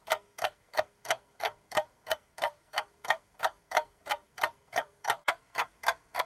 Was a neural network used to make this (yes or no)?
yes